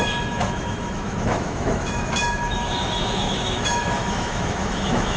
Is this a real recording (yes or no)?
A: no